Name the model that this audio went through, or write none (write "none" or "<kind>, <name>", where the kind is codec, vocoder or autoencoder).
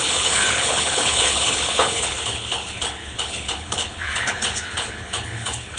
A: codec, HILCodec